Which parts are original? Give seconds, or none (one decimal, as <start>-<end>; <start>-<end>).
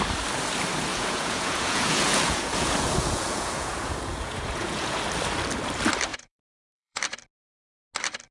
0.0-0.9; 5.0-6.1; 7.0-8.3